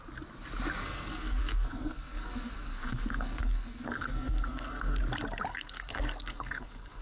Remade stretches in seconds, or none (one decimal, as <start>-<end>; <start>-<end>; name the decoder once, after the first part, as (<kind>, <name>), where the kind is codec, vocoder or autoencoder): 0.8-5.0 (codec, SNAC); 5.5-7.0